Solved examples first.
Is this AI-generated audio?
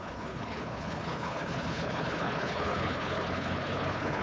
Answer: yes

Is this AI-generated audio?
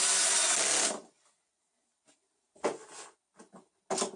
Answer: no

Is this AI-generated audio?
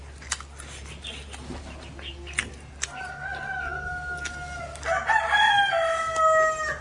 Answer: no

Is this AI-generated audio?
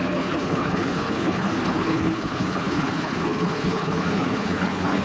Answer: yes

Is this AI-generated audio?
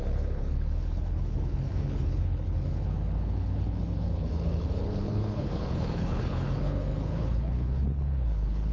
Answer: yes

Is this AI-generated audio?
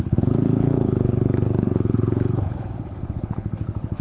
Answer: yes